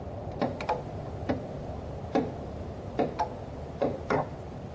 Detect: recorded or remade remade